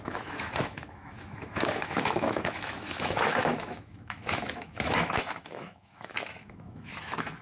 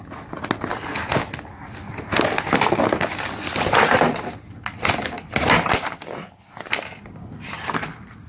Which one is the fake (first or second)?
first